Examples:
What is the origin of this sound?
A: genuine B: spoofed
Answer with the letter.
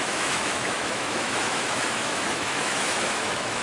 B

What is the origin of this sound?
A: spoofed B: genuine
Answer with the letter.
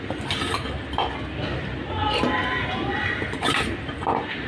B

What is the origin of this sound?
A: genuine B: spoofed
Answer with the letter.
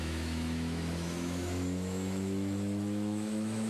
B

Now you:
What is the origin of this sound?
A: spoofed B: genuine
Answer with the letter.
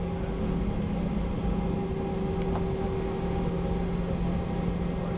B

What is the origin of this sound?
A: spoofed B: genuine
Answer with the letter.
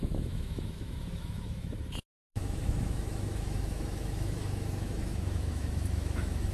A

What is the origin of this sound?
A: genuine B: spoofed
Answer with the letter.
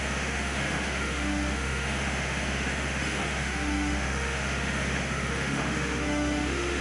B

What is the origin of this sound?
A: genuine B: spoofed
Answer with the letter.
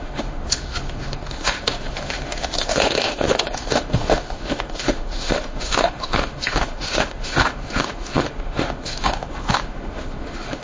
B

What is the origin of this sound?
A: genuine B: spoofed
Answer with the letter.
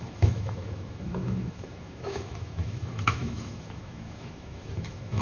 B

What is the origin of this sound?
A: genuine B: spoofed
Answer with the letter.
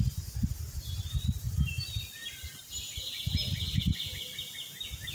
A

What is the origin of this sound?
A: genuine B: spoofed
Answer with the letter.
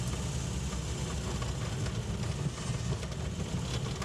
A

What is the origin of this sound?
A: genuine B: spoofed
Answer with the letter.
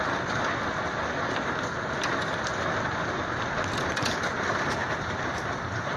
A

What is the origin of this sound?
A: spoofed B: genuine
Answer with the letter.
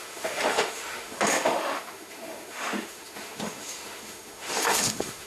A